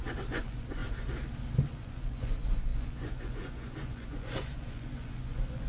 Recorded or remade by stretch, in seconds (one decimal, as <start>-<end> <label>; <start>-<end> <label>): 0.0-0.8 remade; 0.8-1.7 recorded; 1.7-5.7 remade